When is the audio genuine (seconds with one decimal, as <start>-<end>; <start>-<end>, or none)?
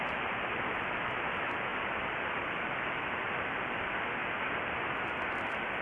0.0-5.8